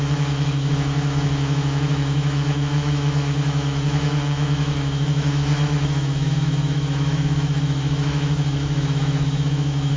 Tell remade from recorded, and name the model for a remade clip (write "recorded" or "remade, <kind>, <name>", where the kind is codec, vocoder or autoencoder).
remade, autoencoder, DAC-VAE